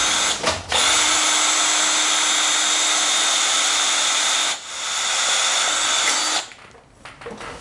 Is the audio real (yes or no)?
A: yes